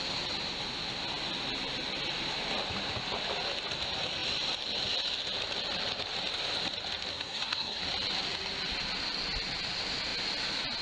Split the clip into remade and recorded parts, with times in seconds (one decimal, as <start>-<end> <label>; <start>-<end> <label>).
0.0-7.1 recorded; 7.1-7.8 remade; 7.8-10.8 recorded